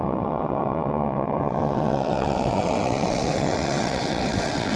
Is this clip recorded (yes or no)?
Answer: no